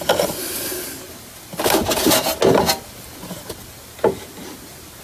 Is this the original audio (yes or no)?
yes